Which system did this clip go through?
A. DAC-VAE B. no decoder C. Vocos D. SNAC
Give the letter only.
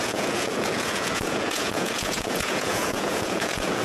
C